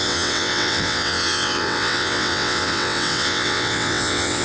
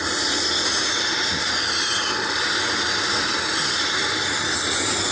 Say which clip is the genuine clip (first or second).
second